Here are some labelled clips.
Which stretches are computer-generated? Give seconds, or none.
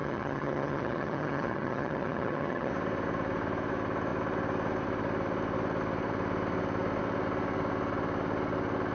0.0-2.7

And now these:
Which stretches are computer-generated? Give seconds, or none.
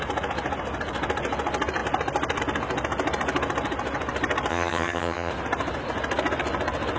4.5-5.3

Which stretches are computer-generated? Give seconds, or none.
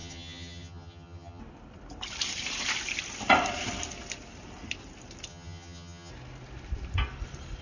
0.0-1.4; 5.3-6.1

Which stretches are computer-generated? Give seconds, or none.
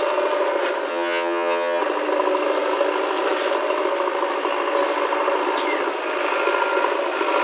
0.9-1.8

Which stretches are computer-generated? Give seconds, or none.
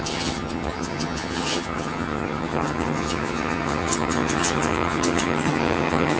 0.0-6.2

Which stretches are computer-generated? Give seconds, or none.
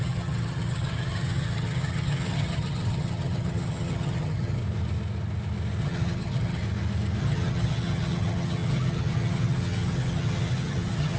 0.0-4.6; 5.8-6.6; 7.2-11.2